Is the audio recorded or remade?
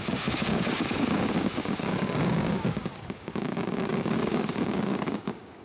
remade